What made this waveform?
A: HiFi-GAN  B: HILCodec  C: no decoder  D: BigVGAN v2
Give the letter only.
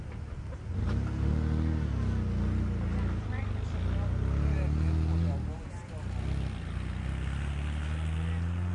C